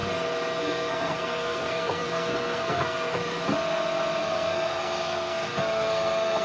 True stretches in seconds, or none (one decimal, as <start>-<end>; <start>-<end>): 0.0-0.6; 3.2-4.2